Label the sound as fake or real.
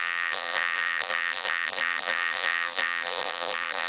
fake